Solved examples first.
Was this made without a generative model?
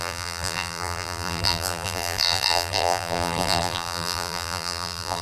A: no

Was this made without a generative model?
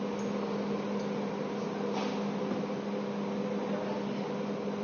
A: yes